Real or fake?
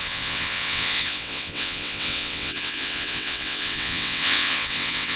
fake